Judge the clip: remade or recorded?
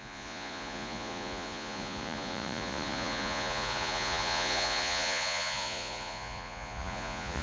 remade